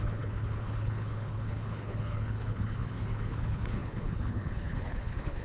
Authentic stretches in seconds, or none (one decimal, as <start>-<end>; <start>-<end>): none